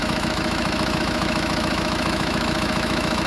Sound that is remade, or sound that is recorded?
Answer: remade